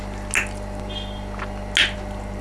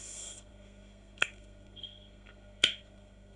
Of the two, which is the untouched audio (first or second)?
first